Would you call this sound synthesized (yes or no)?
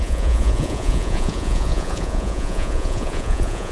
yes